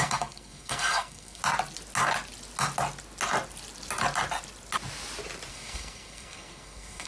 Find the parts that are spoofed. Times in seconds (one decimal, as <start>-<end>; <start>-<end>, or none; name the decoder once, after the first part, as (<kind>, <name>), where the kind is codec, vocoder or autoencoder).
0.0-1.4 (codec, SNAC); 5.5-7.1